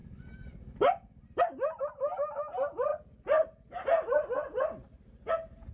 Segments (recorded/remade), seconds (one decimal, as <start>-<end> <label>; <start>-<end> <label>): 0.0-1.4 remade; 1.4-2.9 recorded; 2.9-5.3 remade; 5.3-5.7 recorded